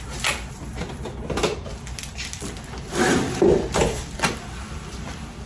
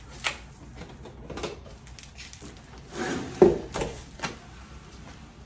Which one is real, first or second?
second